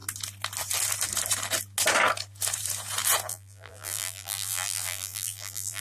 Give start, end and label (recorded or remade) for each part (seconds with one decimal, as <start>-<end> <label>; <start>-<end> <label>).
0.0-3.3 recorded; 3.3-5.8 remade